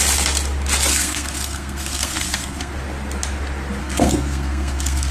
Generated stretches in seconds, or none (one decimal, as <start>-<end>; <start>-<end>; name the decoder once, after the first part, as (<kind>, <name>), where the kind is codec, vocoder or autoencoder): 0.9-2.7 (codec, SNAC); 3.8-5.1

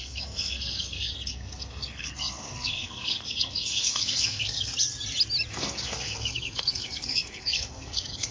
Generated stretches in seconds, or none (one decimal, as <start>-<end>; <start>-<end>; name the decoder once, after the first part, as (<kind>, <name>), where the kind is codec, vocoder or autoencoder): 0.0-4.7 (codec, SNAC); 5.5-8.3

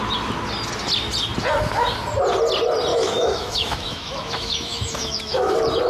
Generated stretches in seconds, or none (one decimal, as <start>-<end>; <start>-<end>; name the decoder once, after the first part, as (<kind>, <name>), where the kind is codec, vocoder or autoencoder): 2.9-5.5 (autoencoder, DAC-VAE)

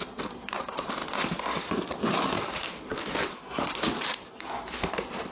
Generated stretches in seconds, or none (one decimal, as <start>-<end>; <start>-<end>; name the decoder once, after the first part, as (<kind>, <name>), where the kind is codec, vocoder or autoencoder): 0.0-1.0 (vocoder, BigVGAN v2); 1.8-5.3

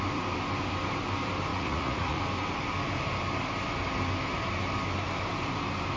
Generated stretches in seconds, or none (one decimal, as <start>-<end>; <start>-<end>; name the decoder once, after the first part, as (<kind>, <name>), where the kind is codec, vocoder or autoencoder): 1.5-2.2 (vocoder, Vocos)